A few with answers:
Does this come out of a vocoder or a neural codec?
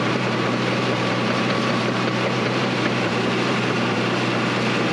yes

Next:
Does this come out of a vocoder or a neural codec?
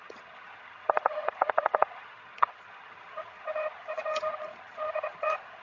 yes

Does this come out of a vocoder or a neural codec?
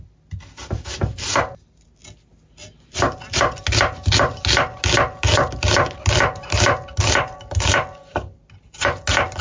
no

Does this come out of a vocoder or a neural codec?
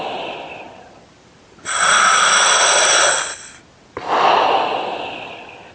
no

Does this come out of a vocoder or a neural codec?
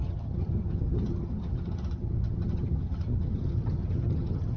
yes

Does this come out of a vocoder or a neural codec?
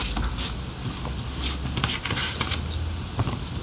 no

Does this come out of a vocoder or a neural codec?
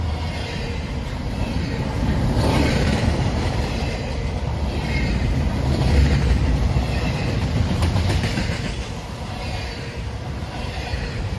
yes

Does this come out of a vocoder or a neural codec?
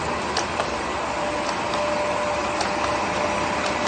no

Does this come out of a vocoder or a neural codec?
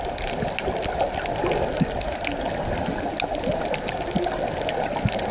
no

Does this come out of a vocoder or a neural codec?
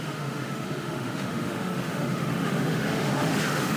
yes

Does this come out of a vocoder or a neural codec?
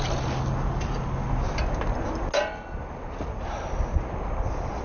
no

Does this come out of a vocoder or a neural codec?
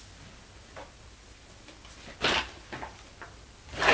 no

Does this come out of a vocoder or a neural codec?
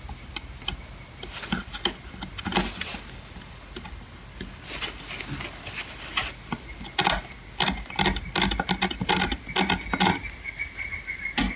no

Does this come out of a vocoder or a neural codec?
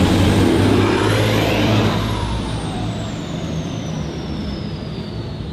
yes